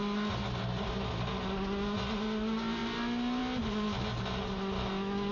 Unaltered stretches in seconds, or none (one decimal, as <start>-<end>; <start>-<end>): 0.0-5.3